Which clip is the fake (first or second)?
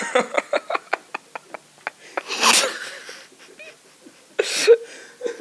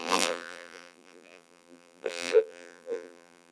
second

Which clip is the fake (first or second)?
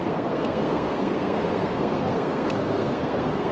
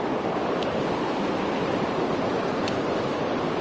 first